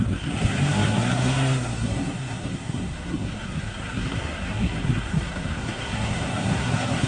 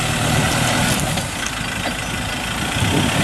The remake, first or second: first